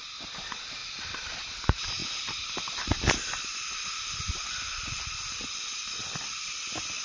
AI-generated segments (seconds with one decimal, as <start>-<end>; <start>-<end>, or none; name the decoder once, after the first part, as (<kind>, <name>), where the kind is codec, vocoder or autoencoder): 0.8-1.4 (vocoder, BigVGAN v2); 5.8-6.5

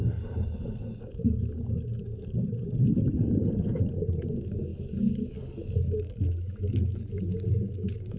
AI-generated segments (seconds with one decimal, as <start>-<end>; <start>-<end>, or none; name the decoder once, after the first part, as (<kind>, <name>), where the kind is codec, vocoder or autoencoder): 0.0-2.5 (codec, DAC); 3.2-8.2

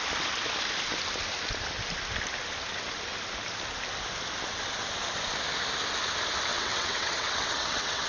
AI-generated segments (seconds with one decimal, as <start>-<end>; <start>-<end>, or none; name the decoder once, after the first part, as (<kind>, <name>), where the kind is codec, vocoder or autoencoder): 6.5-8.1 (vocoder, WaveNeXt)

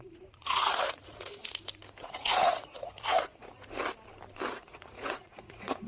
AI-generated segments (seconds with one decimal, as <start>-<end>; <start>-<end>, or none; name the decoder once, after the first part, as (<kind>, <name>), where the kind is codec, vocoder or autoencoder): 0.0-1.4 (vocoder, Vocos); 2.0-3.8; 4.5-5.9

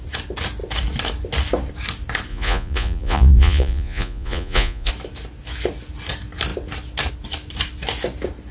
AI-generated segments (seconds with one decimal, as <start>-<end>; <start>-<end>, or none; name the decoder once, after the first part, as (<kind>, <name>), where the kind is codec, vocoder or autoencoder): 2.3-4.9 (vocoder, Vocos)